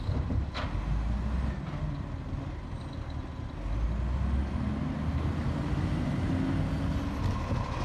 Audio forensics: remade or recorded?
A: recorded